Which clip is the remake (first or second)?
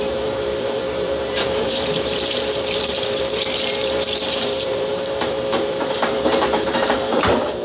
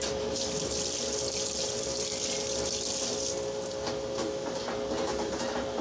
first